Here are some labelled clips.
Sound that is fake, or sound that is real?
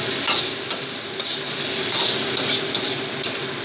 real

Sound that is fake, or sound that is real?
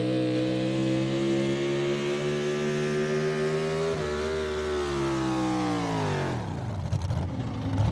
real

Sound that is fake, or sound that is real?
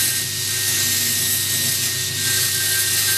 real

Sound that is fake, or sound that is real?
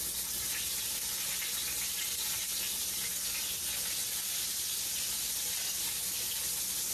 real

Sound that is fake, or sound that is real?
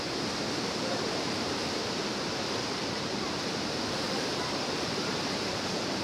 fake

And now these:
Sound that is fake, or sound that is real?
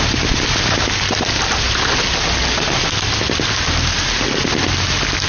real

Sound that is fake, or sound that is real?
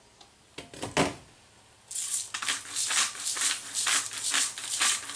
real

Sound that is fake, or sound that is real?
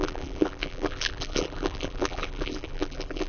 fake